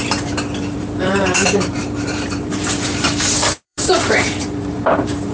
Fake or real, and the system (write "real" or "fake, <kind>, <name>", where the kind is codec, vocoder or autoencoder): fake, vocoder, BigVGAN v2